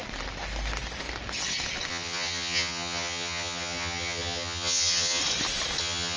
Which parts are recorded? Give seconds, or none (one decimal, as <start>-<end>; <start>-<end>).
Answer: 0.0-1.9; 5.2-5.8